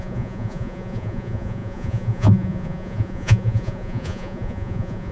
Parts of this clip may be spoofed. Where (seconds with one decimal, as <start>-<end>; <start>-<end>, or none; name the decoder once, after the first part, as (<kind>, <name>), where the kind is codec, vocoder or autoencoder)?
0.0-5.1 (vocoder, Vocos)

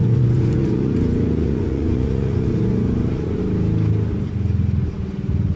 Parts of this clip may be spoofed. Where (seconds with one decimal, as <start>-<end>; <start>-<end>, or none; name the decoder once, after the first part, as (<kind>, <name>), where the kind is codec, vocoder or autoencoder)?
0.0-3.4 (vocoder, Vocos)

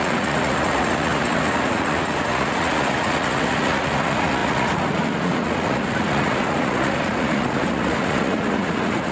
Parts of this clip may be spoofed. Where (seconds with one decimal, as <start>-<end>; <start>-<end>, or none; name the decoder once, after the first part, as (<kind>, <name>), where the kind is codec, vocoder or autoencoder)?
0.0-9.1 (vocoder, Vocos)

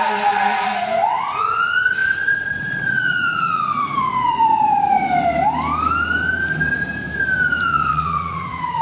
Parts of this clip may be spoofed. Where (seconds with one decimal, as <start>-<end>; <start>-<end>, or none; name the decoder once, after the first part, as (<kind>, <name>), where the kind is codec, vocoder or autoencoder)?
0.0-5.0 (vocoder, Vocos); 7.6-8.8

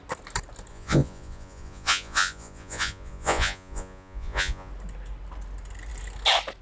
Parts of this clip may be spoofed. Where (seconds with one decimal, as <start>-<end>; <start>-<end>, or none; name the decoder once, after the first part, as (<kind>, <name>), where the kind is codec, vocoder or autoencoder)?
0.7-4.7 (vocoder, Vocos)